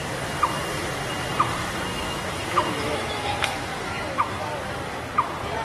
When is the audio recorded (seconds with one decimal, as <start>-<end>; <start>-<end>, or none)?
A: 0.0-1.9; 4.4-5.6